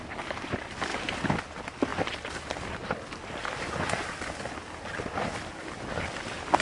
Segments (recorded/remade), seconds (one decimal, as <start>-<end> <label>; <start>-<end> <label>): 0.0-6.6 recorded